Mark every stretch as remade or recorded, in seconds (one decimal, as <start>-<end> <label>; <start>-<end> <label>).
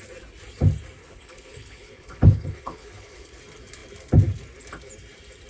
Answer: 0.0-1.0 recorded; 1.0-3.4 remade; 3.4-5.5 recorded